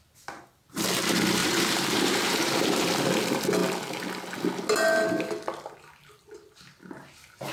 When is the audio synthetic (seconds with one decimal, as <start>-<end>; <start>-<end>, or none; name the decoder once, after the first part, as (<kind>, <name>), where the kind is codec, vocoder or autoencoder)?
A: 1.4-2.9 (vocoder, BigVGAN v2)